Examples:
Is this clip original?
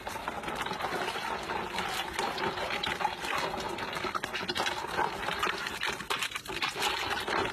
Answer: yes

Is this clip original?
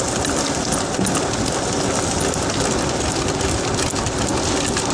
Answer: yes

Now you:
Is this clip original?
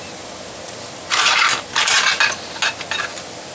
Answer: yes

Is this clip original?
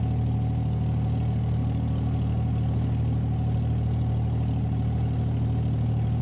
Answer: yes